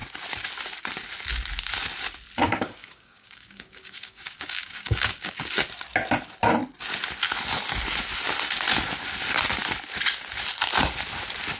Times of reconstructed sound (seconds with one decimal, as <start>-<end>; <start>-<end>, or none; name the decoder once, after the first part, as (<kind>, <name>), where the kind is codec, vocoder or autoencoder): 2.4-5.5 (codec, DAC)